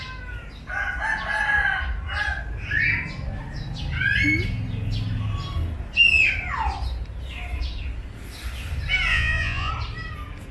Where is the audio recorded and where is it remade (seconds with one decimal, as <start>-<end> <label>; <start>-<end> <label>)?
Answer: 0.0-9.1 recorded; 9.1-9.7 remade; 9.7-10.5 recorded